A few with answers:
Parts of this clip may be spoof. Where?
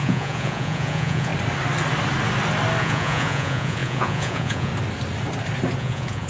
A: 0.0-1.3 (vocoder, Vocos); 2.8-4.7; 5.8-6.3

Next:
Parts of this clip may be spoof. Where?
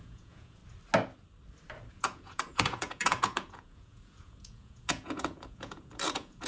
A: 0.0-0.6 (vocoder, Vocos); 1.9-6.5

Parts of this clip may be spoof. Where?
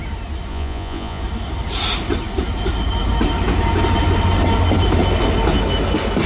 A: 0.5-1.2 (vocoder, Vocos)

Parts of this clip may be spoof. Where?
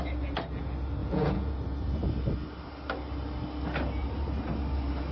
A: 1.0-1.5 (vocoder, Vocos)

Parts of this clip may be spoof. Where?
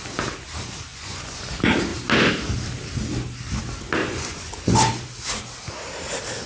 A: 0.9-1.4 (vocoder, Vocos); 4.0-4.9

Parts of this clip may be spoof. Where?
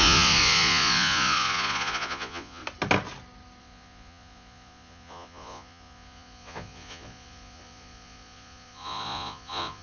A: 0.0-2.6 (vocoder, Vocos); 3.6-9.8